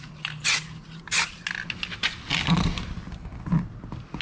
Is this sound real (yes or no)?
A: yes